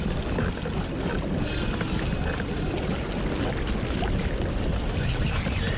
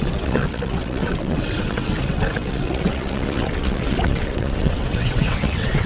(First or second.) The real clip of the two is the first